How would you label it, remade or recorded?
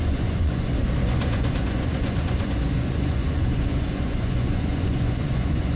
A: remade